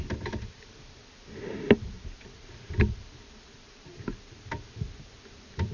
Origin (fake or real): real